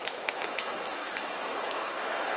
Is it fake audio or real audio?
fake